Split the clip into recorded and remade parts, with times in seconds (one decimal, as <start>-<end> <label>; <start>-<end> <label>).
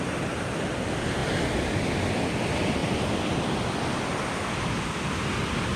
0.0-5.8 recorded